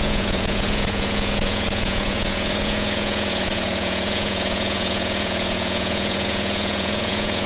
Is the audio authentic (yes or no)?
no